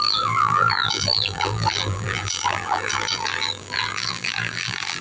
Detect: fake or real fake